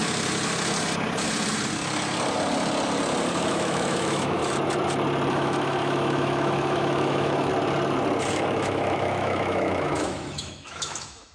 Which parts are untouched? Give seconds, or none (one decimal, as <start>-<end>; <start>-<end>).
0.0-3.4; 4.4-5.3; 7.5-8.3